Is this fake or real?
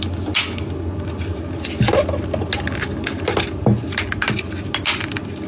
real